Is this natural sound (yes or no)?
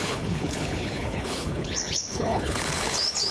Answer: no